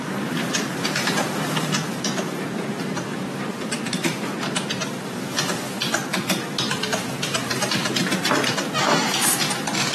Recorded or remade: remade